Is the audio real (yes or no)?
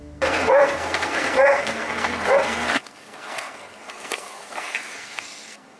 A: no